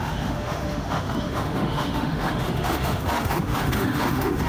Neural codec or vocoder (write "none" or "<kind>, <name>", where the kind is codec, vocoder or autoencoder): autoencoder, DAC-VAE